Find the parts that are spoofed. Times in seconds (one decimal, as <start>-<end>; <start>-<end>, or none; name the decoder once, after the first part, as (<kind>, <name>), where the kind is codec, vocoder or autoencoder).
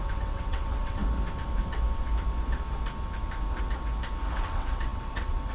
0.0-1.0 (vocoder, WaveNeXt); 4.3-5.5